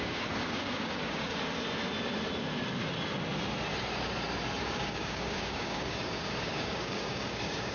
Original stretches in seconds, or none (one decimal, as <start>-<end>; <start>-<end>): 1.3-4.9